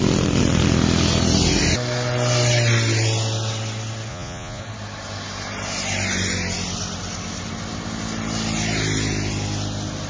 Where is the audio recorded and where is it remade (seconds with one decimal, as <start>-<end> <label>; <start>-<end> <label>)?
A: 0.0-4.1 recorded; 4.1-4.6 remade; 4.6-10.1 recorded